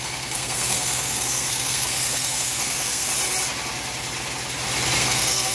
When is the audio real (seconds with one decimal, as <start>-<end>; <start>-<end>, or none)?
3.1-5.0

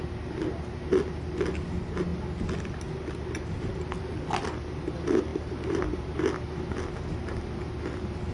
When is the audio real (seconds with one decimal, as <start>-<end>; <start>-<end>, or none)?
0.0-8.3

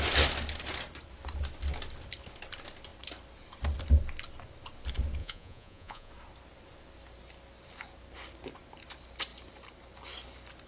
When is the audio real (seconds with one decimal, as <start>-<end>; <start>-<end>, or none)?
0.0-5.2; 6.1-10.7

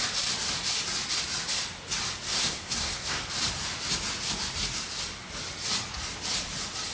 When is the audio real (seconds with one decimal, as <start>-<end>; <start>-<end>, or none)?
0.0-2.3; 3.2-6.9

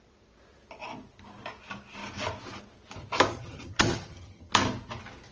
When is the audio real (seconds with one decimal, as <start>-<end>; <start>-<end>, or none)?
0.0-3.3; 4.5-5.3